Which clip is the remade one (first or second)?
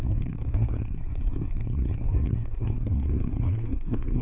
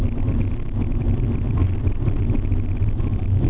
first